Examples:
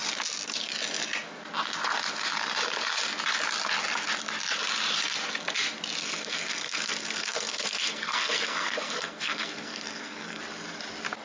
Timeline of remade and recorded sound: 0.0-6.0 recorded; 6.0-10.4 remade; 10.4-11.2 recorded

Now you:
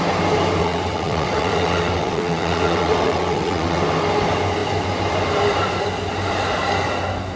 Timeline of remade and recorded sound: 0.0-0.6 recorded; 0.6-3.8 remade; 3.8-7.4 recorded

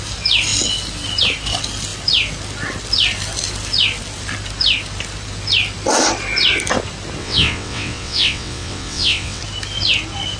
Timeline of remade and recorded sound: 0.0-7.2 recorded; 7.2-9.4 remade; 9.4-10.4 recorded

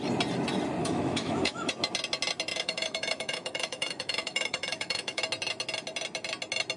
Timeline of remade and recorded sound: 0.0-0.8 recorded; 0.8-1.7 remade; 1.7-2.5 recorded; 2.5-5.2 remade; 5.2-6.8 recorded